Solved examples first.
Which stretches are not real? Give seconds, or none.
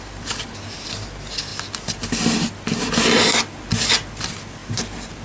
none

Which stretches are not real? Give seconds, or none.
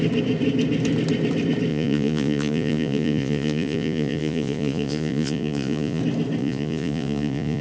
1.7-6.0; 6.4-7.6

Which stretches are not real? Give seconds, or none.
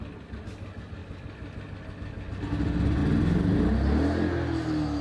none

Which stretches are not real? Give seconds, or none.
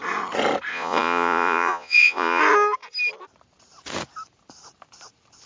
0.7-2.4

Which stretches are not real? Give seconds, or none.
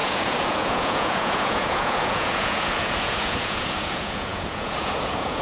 0.0-5.4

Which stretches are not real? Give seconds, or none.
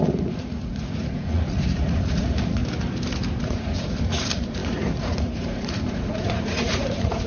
0.0-2.6; 3.4-7.3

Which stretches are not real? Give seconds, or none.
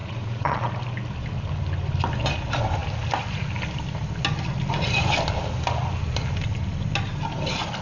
0.0-0.7